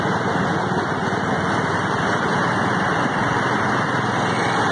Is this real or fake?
real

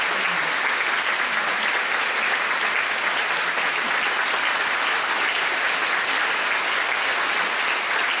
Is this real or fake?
real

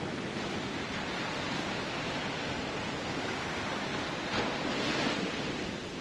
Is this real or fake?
real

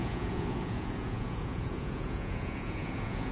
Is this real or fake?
fake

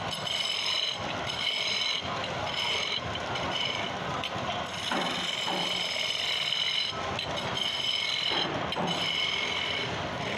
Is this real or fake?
real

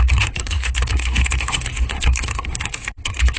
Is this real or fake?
fake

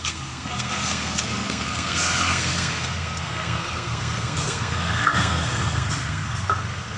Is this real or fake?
fake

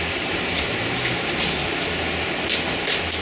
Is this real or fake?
real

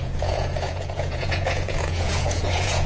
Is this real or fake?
fake